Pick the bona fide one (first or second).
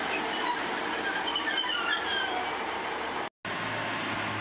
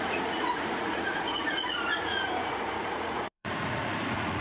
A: first